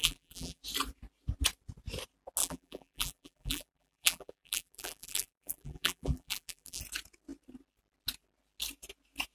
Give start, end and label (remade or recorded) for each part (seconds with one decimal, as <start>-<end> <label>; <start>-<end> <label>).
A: 0.0-0.6 remade; 0.6-2.4 recorded; 2.4-6.8 remade; 6.8-9.3 recorded